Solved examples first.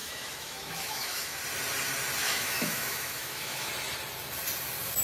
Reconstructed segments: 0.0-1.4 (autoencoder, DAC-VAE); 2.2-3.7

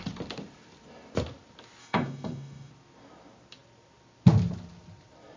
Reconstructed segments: 1.8-2.7 (autoencoder, DAC-VAE)

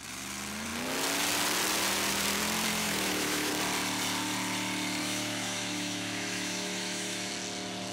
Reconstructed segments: 2.8-3.5 (autoencoder, DAC-VAE); 5.0-7.3

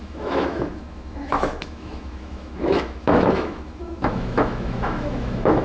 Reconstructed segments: 0.0-5.6 (autoencoder, DAC-VAE)